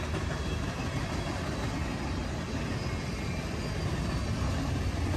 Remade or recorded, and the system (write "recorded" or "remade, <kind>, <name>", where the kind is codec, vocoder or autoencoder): recorded